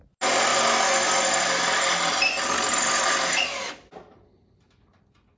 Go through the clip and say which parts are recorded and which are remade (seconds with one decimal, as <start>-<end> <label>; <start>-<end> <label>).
0.0-5.4 recorded